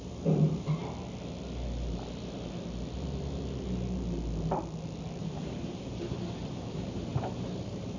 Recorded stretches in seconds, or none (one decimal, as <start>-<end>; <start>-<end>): 0.8-5.2